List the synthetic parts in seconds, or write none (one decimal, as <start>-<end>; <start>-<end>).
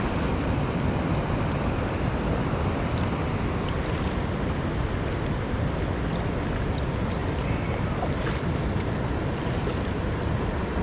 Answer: 7.2-8.3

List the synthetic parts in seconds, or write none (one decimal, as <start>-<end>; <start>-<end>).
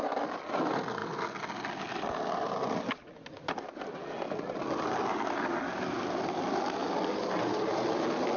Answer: none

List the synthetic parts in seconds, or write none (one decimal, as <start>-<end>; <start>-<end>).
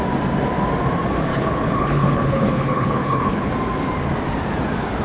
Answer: 1.3-3.5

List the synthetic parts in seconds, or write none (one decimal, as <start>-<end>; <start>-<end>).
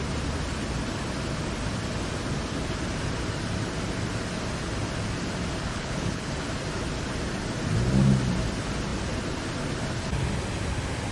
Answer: 5.7-6.3